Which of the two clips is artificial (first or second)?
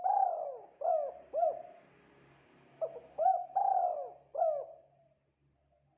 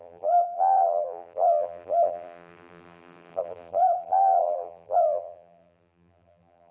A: second